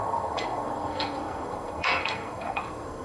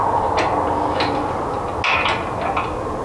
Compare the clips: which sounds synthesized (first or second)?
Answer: first